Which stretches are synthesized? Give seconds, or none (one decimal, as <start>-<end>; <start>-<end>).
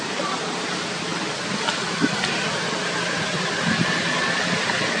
1.1-2.5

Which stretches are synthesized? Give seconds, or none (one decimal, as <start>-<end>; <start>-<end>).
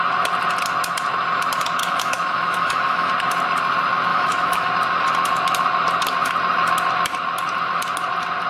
1.8-3.1; 4.1-4.7